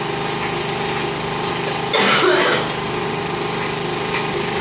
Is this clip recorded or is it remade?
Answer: recorded